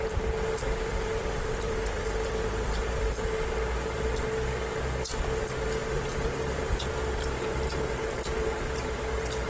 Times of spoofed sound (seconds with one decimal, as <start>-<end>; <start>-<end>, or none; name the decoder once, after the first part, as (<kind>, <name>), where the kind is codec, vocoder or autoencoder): 0.9-3.1 (vocoder, BigVGAN v2); 5.8-6.9